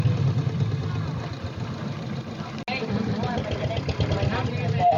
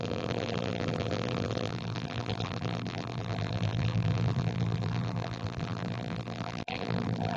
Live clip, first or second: first